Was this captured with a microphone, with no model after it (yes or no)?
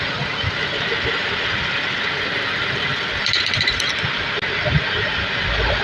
yes